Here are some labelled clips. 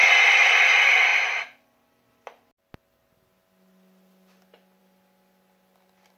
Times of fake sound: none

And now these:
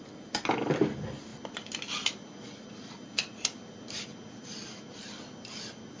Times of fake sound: none

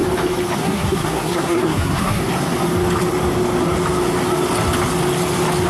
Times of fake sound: 0.6-2.2 (codec, SNAC)

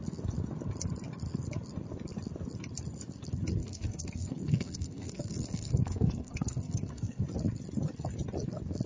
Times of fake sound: 3.6-7.2 (codec, SNAC)

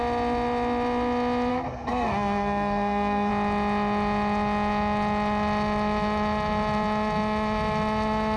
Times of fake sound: 1.5-3.3 (codec, SNAC)

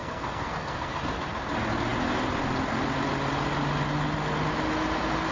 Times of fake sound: 0.0-1.0 (codec, SNAC)

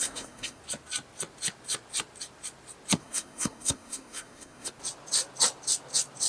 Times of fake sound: 0.0-0.6 (codec, SNAC); 3.0-4.7